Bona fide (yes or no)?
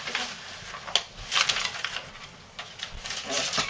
yes